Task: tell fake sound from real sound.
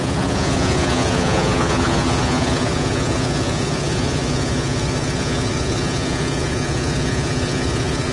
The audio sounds fake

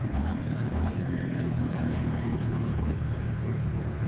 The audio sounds fake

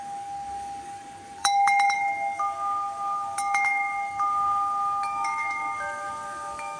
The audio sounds fake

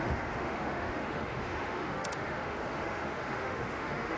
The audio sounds fake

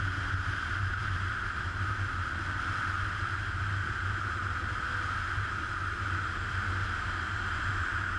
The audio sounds real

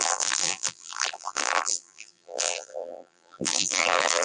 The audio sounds fake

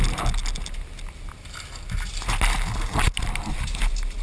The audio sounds real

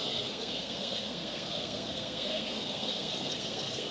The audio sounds fake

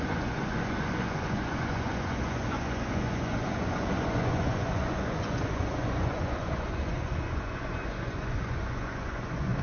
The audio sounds fake